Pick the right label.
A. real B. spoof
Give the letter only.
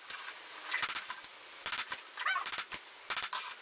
A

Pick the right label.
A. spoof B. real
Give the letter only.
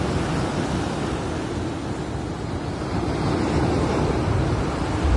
B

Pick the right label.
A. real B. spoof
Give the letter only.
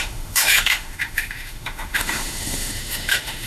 B